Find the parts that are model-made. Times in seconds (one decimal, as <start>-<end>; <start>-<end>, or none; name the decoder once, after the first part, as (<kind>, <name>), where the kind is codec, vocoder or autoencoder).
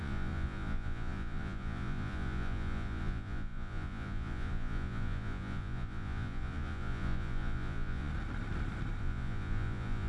0.0-8.1 (vocoder, Vocos); 9.0-10.1